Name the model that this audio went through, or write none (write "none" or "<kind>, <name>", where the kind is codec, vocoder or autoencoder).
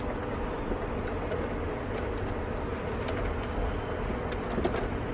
none